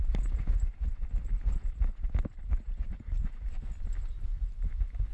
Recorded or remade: recorded